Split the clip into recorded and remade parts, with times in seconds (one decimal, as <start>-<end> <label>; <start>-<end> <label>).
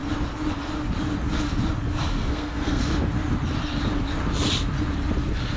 0.0-2.2 recorded; 2.2-2.8 remade; 2.8-5.6 recorded